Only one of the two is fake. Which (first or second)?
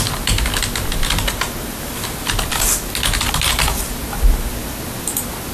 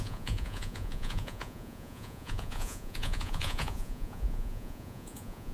second